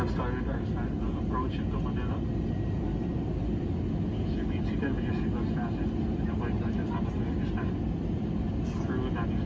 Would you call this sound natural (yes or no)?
yes